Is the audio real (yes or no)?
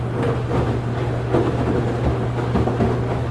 yes